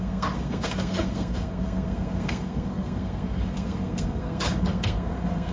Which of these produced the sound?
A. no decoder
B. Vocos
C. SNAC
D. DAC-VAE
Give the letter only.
C